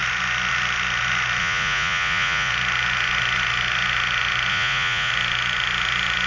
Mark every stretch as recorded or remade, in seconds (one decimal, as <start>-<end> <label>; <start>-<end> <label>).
0.0-1.4 recorded; 1.4-2.5 remade; 2.5-4.5 recorded; 4.5-5.1 remade; 5.1-6.3 recorded